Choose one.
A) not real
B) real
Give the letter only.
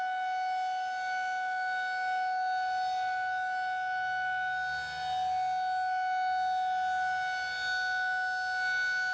B